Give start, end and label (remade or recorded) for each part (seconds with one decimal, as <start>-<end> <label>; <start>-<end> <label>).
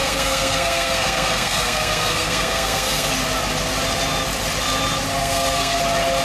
0.0-3.1 remade; 3.1-5.2 recorded; 5.2-5.8 remade; 5.8-6.2 recorded